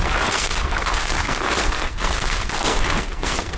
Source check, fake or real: fake